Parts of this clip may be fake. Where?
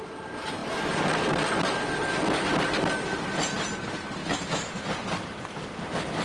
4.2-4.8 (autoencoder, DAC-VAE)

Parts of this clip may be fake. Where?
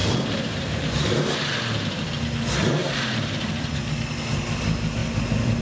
0.0-2.1 (vocoder, BigVGAN v2); 2.8-3.5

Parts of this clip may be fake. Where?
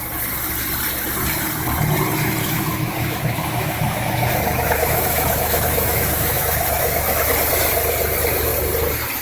2.4-7.3 (autoencoder, DAC-VAE)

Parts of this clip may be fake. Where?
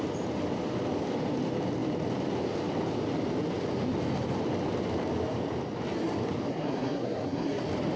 6.5-7.6 (codec, SNAC)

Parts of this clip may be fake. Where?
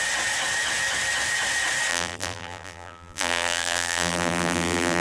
1.9-5.0 (vocoder, BigVGAN v2)